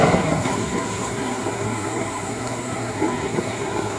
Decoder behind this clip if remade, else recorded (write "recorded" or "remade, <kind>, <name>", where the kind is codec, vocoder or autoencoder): remade, codec, SNAC